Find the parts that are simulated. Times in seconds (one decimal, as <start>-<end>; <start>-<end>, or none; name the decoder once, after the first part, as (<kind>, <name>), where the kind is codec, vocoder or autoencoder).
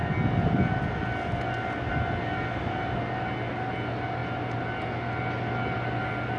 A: none